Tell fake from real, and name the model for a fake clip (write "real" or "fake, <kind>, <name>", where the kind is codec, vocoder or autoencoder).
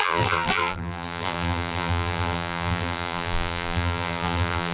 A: fake, vocoder, BigVGAN v2